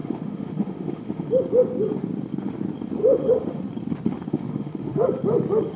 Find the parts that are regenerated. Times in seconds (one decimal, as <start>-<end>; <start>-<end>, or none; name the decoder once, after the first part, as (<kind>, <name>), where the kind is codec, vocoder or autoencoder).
0.0-1.3 (autoencoder, DAC-VAE); 3.0-3.6; 4.3-5.0